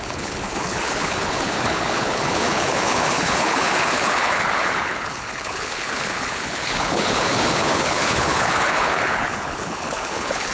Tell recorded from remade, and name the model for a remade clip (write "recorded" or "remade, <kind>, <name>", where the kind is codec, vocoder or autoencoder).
remade, codec, HILCodec